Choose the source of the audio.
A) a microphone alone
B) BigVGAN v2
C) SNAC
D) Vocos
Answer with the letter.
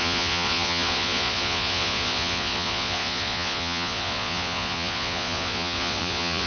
D